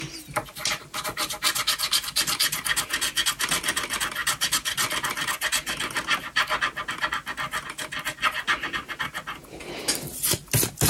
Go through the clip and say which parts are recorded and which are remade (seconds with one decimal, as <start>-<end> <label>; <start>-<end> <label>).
0.0-10.9 recorded